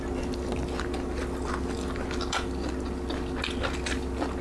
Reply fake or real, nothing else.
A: real